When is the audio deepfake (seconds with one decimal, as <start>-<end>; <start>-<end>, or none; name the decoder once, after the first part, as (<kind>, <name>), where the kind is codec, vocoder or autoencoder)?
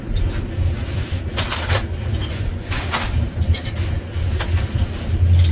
2.2-2.8 (vocoder, Vocos)